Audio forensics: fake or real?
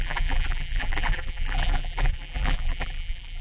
fake